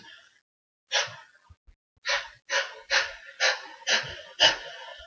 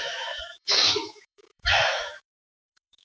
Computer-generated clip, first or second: second